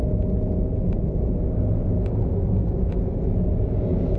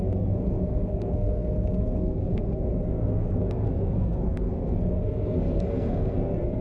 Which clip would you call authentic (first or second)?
first